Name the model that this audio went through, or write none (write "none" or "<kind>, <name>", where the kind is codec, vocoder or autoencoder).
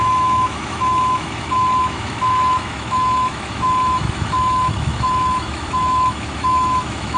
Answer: autoencoder, DAC-VAE